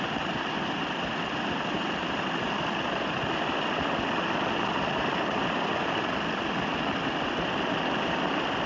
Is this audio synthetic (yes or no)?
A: no